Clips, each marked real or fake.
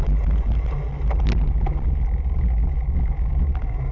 real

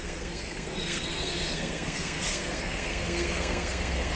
fake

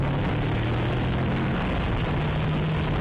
real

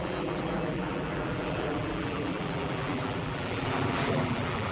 fake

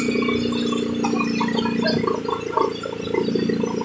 real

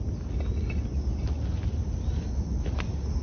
real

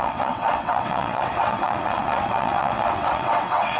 fake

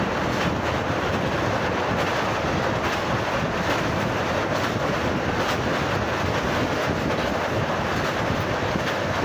real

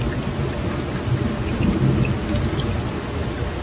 real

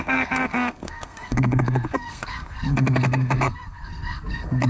fake